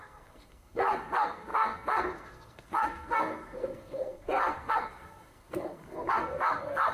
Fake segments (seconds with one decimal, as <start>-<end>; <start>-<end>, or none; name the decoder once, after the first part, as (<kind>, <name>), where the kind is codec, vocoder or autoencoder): 0.0-6.9 (codec, SNAC)